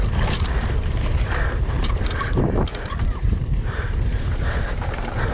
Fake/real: fake